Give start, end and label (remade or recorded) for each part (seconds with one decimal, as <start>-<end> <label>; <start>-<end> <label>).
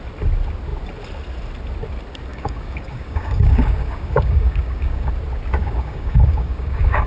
0.0-2.3 recorded; 2.3-5.1 remade; 5.1-5.6 recorded; 5.6-7.1 remade